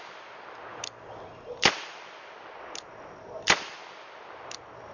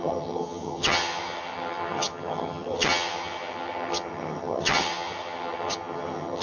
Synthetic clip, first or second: second